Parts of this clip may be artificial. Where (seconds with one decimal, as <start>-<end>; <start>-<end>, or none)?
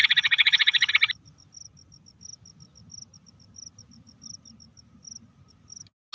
0.0-0.9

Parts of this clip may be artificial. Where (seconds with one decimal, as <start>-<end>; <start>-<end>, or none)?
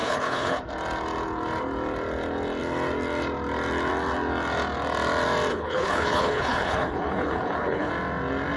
0.0-0.6; 5.5-7.9